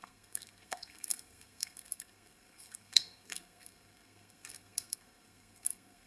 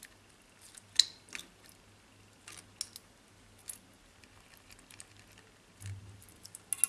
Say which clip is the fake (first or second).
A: first